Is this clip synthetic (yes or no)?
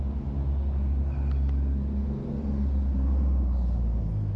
no